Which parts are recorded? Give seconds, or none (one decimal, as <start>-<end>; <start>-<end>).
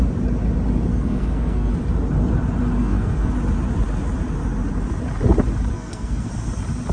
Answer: 0.0-0.9; 1.7-2.8; 3.3-5.7; 6.3-6.9